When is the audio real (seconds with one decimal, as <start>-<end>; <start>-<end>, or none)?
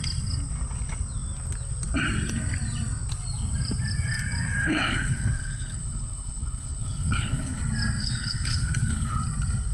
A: 0.0-4.6; 7.6-8.0; 9.2-9.7